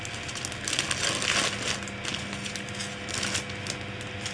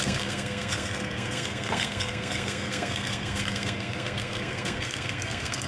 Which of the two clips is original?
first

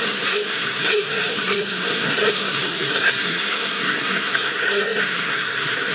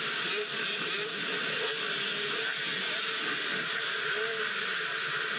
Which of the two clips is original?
second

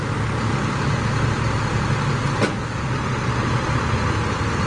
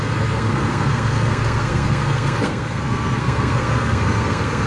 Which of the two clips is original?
first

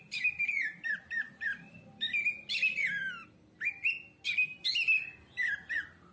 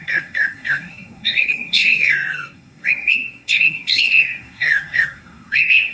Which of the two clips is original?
first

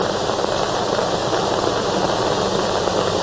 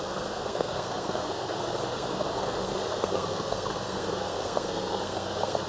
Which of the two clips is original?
first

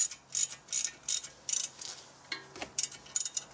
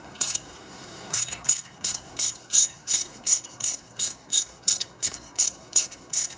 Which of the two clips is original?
first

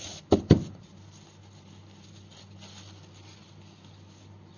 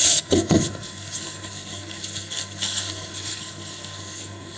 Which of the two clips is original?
first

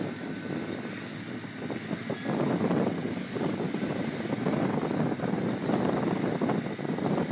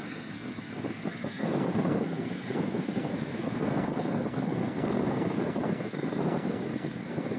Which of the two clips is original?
first